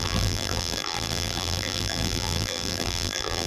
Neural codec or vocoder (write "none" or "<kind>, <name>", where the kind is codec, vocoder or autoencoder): vocoder, BigVGAN v2